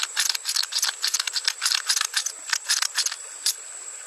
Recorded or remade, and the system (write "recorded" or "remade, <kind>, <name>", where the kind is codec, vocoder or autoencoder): recorded